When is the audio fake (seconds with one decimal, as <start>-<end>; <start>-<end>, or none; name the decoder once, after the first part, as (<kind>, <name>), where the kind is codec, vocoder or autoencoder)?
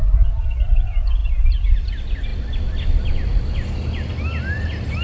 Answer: none